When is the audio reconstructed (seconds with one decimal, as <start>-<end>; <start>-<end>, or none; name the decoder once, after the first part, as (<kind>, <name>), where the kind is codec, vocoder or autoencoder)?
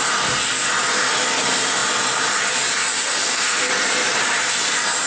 3.2-3.7 (codec, SNAC)